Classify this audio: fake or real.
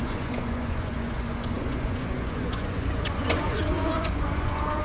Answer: fake